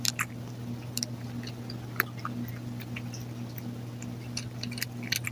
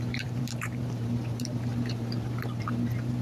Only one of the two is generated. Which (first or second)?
second